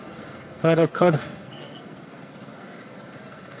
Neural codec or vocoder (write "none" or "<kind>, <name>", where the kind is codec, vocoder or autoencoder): codec, SNAC